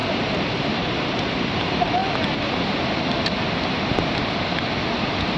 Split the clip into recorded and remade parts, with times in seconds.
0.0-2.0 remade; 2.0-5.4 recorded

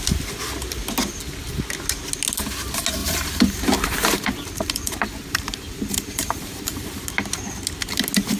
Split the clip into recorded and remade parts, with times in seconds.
0.0-3.0 recorded; 3.0-7.0 remade; 7.0-8.4 recorded